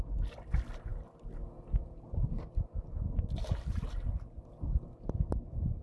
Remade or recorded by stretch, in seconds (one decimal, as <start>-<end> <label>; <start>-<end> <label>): 0.0-5.8 recorded